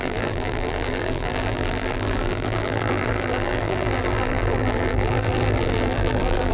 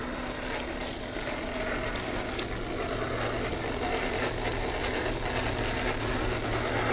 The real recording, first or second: second